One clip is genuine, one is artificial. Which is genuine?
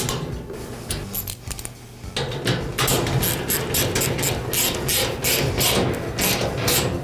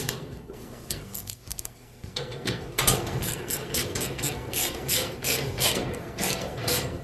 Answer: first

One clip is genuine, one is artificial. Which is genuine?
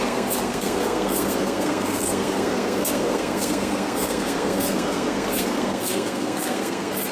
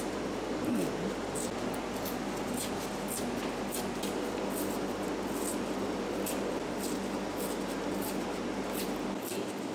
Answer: second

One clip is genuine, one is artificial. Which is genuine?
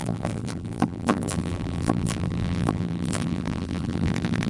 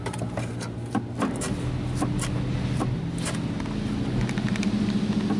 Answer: second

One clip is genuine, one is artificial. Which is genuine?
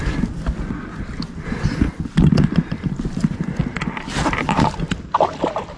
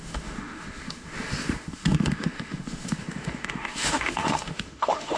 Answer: first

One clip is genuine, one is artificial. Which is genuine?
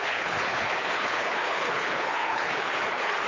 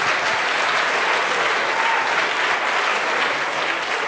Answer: second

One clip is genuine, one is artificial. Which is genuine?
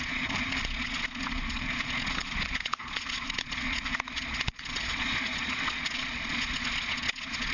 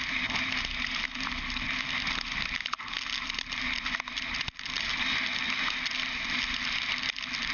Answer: second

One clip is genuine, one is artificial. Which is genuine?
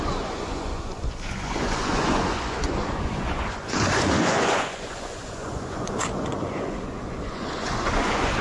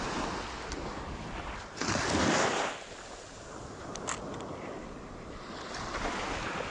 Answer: second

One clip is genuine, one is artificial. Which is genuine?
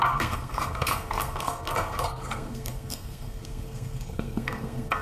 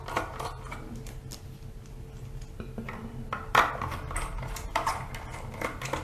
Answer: second